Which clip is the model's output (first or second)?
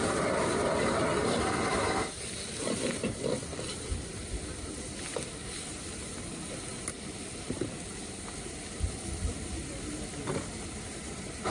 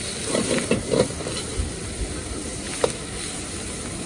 first